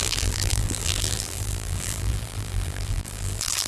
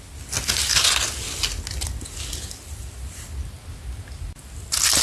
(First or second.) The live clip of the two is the second